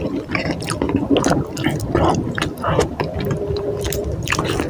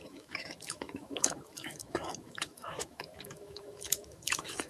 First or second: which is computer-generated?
second